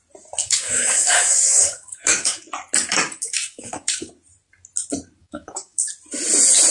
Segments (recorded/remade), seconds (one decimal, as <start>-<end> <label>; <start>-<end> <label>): 0.0-0.4 recorded; 0.4-2.5 remade; 2.5-2.9 recorded; 2.9-4.1 remade; 4.1-5.2 recorded; 5.2-5.9 remade; 5.9-6.7 recorded